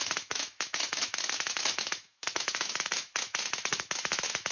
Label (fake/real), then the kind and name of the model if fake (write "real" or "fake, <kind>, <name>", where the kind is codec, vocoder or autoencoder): fake, autoencoder, DAC-VAE